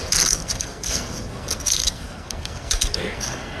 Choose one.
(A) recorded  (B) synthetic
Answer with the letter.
B